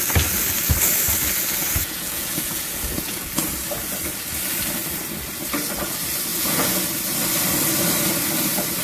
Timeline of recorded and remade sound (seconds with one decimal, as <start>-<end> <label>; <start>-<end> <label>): 0.0-1.6 recorded; 1.6-3.4 remade; 3.4-6.3 recorded; 6.3-6.8 remade; 6.8-8.8 recorded